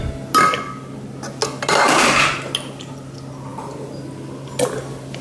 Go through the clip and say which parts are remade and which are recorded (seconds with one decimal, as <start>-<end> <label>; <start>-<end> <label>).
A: 0.0-5.2 recorded